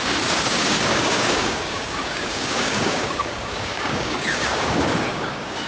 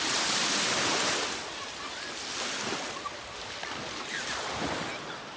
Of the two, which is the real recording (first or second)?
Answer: second